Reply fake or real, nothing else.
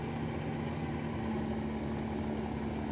real